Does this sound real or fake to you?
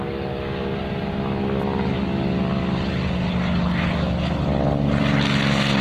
real